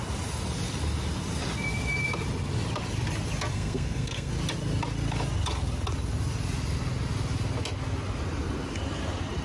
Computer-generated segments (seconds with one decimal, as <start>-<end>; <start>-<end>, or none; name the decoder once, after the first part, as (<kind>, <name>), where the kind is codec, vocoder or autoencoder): 3.5-4.3 (codec, SNAC)